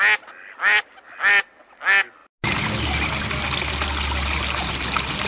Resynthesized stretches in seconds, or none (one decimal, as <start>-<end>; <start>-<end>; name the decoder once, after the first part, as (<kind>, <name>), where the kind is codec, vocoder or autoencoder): none